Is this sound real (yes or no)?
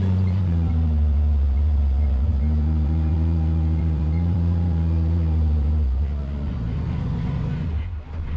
no